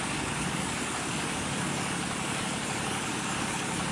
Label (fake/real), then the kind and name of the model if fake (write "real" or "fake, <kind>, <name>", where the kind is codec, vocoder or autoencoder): fake, codec, DAC